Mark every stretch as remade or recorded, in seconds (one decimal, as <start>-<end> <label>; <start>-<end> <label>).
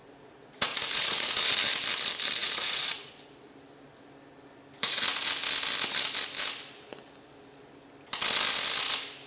0.0-1.4 remade; 1.4-2.4 recorded; 2.4-3.1 remade; 3.1-9.3 recorded